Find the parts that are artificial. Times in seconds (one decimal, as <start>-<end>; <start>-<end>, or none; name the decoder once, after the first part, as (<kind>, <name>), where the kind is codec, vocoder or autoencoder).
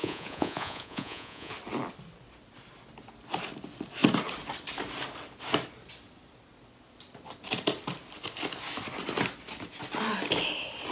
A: 0.0-1.5 (vocoder, Vocos)